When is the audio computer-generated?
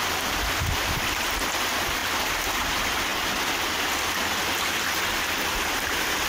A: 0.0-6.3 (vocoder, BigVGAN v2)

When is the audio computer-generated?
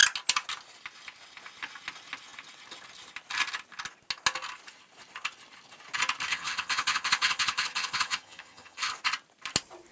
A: 6.3-8.9 (vocoder, HiFi-GAN)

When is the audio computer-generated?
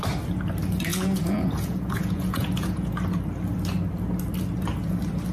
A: 0.9-2.9 (vocoder, Vocos)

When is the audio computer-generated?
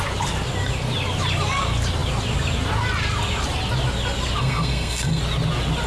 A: 4.4-5.2 (codec, SNAC)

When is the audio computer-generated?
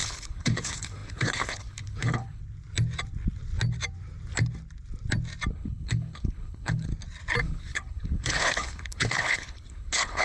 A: 0.0-2.4 (codec, HILCodec); 5.5-6.9; 7.4-10.2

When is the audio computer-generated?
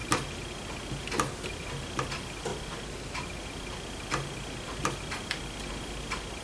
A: none